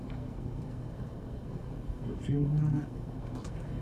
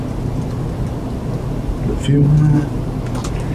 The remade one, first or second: first